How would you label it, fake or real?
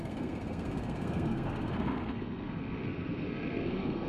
fake